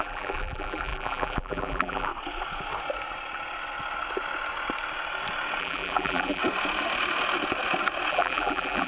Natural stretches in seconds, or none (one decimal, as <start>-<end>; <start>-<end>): 2.1-5.6; 6.4-8.1